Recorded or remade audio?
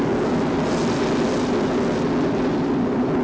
recorded